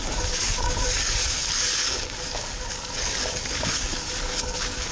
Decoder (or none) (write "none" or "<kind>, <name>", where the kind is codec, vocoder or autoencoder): codec, DAC